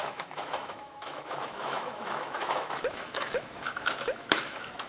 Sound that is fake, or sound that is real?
fake